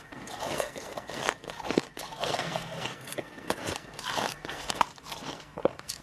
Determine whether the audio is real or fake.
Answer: fake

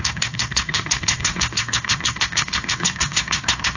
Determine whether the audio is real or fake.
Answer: fake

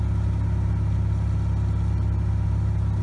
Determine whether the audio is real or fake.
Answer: real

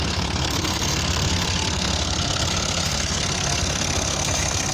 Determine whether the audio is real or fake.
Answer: fake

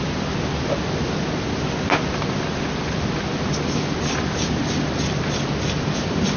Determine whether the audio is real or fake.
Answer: real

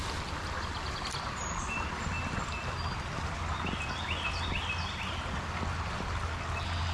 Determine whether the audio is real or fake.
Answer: real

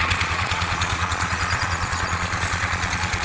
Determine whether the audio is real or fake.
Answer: fake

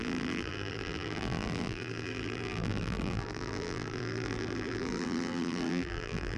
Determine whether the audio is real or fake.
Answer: fake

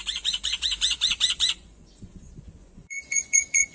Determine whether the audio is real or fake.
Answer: fake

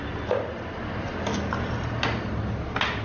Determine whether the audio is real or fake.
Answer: real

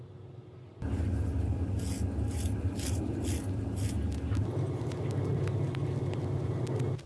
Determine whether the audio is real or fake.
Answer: real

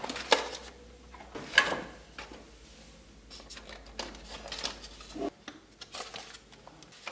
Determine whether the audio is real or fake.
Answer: real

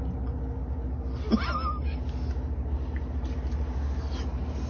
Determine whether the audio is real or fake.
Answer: real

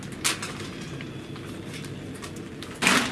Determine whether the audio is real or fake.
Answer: real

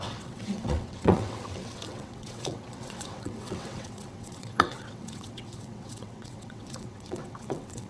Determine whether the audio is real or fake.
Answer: fake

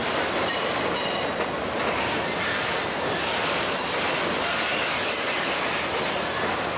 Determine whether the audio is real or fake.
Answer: real